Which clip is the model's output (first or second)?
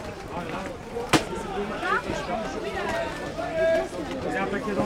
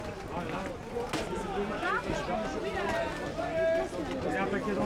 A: first